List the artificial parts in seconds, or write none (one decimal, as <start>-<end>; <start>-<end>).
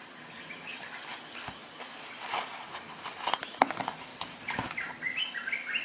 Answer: 4.1-4.7